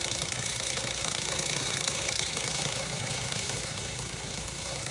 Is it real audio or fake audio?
fake